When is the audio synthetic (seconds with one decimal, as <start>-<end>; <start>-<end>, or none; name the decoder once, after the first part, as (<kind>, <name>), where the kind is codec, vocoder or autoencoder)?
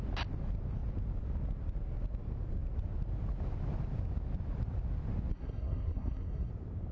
5.3-6.5 (codec, SNAC)